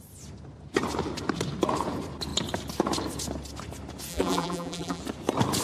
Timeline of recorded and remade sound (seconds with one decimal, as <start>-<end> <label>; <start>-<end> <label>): 0.0-4.1 recorded; 4.1-5.0 remade; 5.0-5.6 recorded